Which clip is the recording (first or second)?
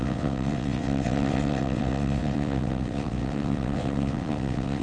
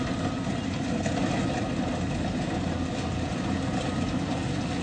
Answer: second